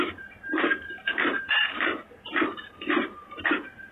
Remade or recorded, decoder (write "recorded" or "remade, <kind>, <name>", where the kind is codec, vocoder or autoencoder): remade, vocoder, BigVGAN v2